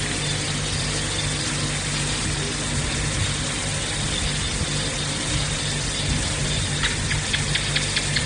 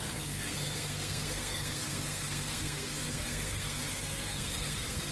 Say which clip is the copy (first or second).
second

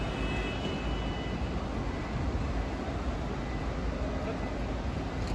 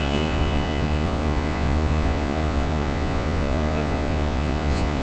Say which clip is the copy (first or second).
second